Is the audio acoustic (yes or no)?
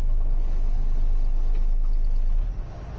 yes